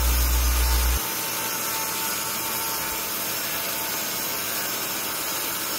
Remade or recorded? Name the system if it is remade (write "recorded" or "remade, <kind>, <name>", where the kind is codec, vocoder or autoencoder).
recorded